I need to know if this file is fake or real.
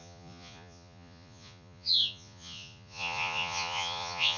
fake